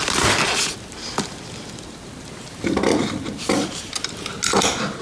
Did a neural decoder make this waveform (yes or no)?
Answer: no